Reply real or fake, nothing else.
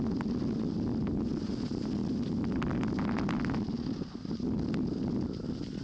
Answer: real